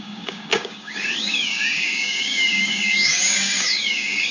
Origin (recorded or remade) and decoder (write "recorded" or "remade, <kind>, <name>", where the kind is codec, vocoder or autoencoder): remade, codec, DAC